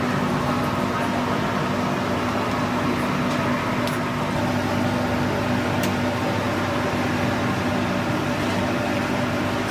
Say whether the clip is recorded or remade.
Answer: recorded